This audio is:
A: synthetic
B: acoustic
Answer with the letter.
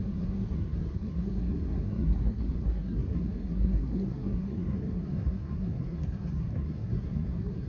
A